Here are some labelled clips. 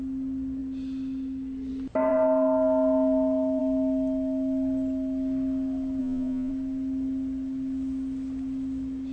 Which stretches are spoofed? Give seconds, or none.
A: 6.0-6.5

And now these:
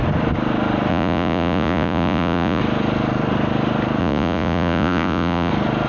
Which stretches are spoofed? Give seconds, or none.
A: 0.9-2.6; 4.0-5.5

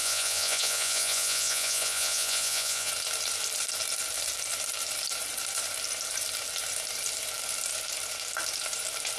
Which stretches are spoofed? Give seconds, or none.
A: 0.0-2.9

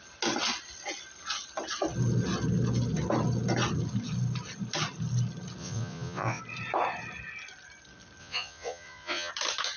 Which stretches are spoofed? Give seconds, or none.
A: 5.6-6.4; 8.2-9.3

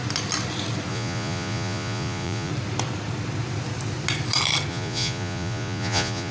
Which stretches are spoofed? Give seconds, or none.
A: 0.9-2.5; 4.7-6.3

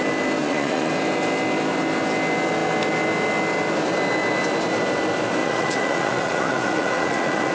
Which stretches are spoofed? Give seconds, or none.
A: 0.4-0.9; 5.4-7.5